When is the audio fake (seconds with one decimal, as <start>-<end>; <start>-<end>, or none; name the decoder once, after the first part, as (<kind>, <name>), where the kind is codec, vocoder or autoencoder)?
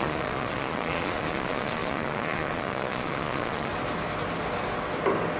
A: 0.0-3.7 (vocoder, Vocos)